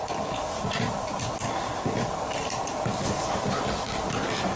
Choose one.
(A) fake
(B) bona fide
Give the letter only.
B